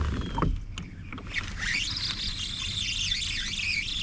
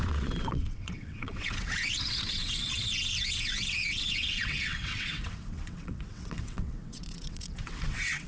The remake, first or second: second